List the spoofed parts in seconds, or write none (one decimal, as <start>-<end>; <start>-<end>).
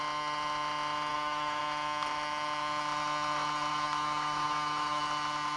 1.1-1.6; 3.7-5.0